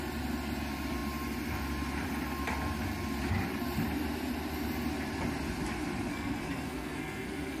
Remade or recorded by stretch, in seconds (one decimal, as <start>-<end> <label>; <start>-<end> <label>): 0.0-6.1 recorded; 6.1-7.6 remade